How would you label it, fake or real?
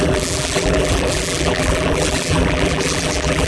fake